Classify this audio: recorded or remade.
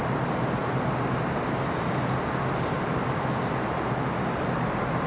recorded